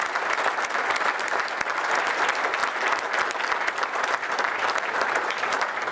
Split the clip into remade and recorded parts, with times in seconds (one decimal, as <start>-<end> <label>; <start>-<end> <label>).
0.0-5.9 recorded